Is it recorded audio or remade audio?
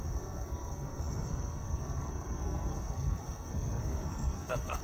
remade